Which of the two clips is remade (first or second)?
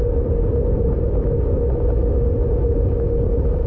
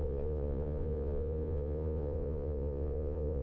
second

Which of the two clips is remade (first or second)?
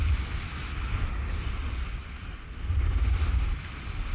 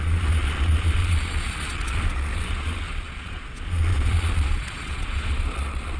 second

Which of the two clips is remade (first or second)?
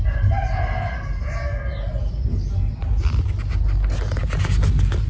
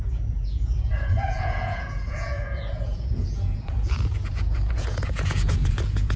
second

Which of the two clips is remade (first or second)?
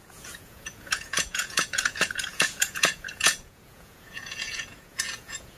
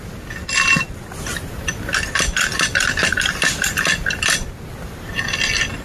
first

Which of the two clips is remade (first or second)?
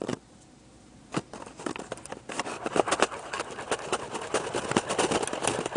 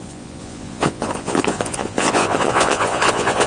second